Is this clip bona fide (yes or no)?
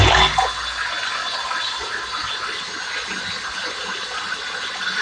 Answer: yes